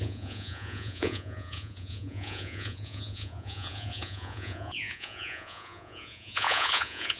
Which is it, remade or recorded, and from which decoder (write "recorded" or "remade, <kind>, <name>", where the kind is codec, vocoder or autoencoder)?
remade, vocoder, Vocos